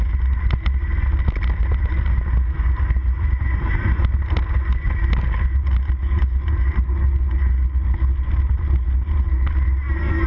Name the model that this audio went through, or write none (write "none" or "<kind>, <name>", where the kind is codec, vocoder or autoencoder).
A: none